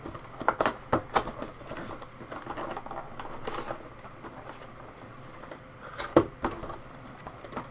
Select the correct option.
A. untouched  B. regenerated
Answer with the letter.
A